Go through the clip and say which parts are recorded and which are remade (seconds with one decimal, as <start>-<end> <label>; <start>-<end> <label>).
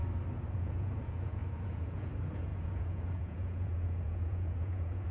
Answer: 0.0-0.5 recorded; 0.5-5.1 remade